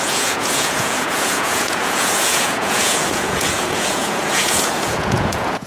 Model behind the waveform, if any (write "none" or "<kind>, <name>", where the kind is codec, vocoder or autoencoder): vocoder, Vocos